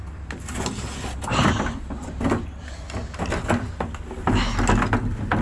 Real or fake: real